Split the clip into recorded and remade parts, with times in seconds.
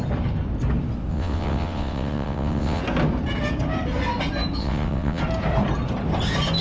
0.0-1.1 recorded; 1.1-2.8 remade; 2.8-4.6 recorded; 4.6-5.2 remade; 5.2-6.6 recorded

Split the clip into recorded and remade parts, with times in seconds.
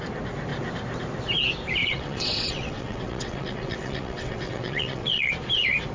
0.0-1.8 recorded; 1.8-5.3 remade; 5.3-5.9 recorded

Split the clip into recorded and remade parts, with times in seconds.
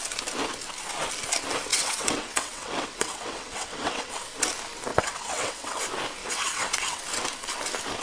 0.0-1.7 recorded; 1.7-4.1 remade; 4.1-4.9 recorded; 4.9-5.8 remade; 5.8-6.2 recorded; 6.2-7.0 remade; 7.0-8.0 recorded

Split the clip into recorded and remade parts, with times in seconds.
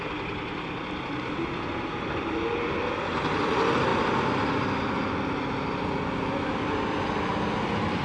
0.0-8.0 recorded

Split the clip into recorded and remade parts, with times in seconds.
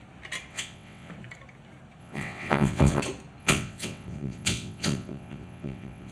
0.0-0.5 recorded; 0.5-1.1 remade; 1.1-2.0 recorded; 2.0-3.0 remade; 3.0-3.4 recorded; 3.4-6.1 remade